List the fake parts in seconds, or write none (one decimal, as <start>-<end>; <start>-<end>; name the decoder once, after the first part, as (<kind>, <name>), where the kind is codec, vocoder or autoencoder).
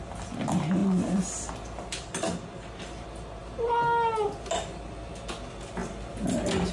none